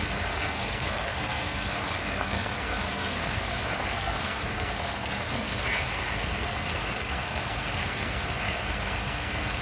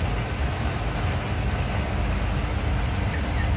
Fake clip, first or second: first